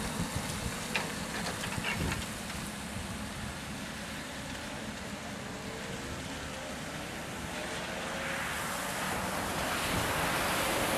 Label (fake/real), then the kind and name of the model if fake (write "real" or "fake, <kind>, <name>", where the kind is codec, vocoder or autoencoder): real